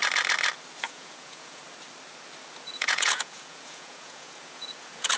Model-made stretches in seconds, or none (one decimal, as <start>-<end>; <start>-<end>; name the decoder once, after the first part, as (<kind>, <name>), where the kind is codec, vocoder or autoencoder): 0.8-1.6 (vocoder, Vocos); 2.6-5.2

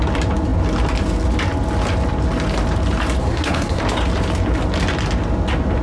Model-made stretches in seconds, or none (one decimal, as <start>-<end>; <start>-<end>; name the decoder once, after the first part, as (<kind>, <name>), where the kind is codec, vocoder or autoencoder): 3.2-3.8 (codec, SNAC)

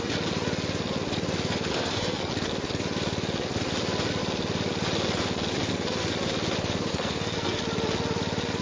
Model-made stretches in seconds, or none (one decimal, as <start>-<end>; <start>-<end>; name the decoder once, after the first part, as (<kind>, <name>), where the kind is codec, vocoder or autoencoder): 1.7-2.3 (codec, SNAC); 6.9-7.6

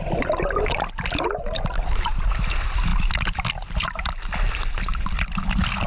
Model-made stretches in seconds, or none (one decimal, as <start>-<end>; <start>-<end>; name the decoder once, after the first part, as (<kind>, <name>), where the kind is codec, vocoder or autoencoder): none